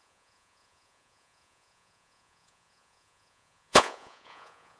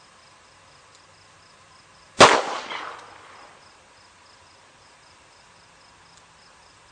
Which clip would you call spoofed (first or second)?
first